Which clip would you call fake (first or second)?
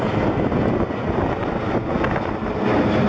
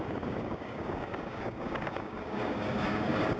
second